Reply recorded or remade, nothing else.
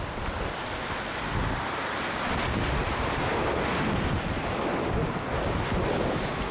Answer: recorded